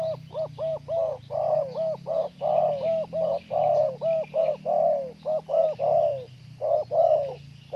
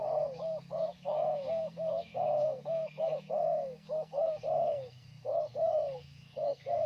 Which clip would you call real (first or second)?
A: first